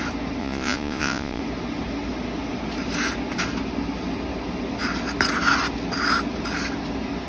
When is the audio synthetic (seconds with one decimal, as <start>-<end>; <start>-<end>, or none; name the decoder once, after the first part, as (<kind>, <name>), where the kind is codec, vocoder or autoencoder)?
0.4-1.4 (vocoder, Vocos)